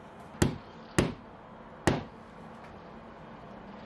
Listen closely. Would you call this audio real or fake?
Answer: real